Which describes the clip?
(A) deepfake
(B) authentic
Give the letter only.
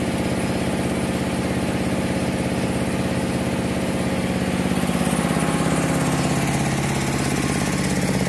B